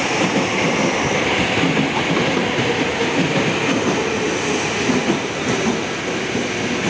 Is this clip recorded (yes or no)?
yes